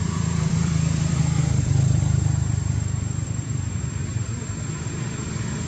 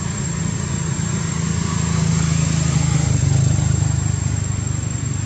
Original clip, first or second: second